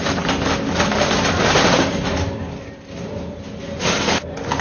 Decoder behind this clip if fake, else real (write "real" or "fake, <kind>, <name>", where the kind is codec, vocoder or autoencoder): fake, vocoder, BigVGAN v2